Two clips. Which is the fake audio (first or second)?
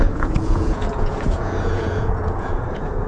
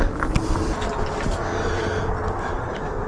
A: first